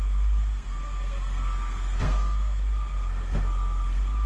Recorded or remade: remade